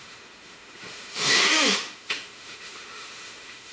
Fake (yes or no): yes